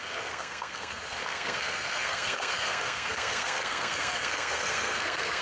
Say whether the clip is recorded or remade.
remade